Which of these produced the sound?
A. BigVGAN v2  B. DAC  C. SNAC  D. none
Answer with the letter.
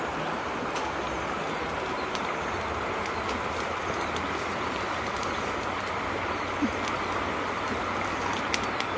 D